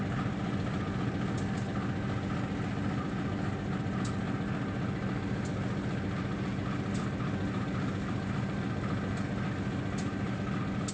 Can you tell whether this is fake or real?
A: real